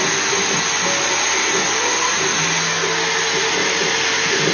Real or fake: real